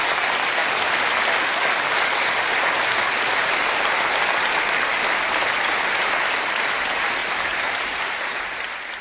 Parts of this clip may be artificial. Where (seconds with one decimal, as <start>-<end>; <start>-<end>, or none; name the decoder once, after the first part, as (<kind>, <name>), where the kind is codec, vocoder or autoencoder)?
0.0-0.6 (vocoder, BigVGAN v2); 1.9-3.6; 4.4-9.0